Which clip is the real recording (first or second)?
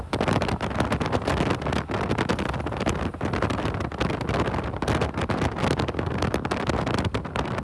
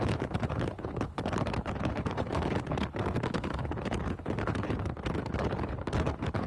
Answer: first